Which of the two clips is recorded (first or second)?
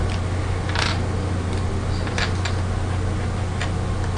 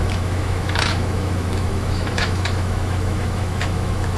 first